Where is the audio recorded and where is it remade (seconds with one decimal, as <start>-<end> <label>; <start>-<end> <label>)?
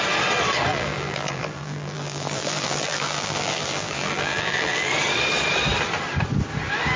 0.0-0.7 recorded; 0.7-4.9 remade; 4.9-7.0 recorded